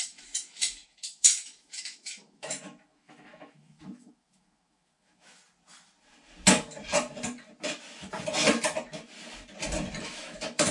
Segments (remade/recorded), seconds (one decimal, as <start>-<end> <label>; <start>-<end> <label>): 0.0-5.4 remade; 5.4-10.0 recorded; 10.0-10.7 remade